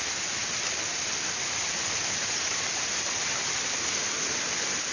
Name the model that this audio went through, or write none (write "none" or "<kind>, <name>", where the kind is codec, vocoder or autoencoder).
none